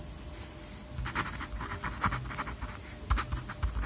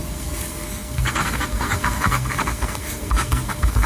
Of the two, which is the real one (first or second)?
first